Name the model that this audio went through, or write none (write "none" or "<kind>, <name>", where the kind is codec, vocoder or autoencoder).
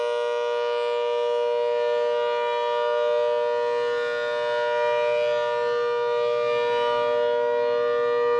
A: none